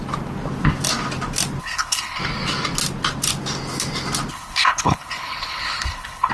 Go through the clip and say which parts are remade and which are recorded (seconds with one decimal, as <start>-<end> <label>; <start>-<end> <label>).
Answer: 0.0-1.6 recorded; 1.6-2.2 remade; 2.2-4.3 recorded; 4.3-6.3 remade